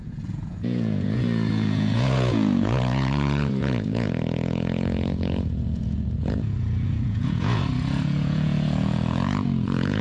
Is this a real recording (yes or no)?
no